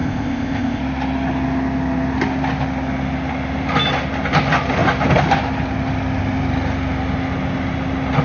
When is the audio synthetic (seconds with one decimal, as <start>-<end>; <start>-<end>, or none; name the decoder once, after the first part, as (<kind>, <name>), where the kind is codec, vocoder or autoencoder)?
0.0-0.8 (codec, ZipCodec)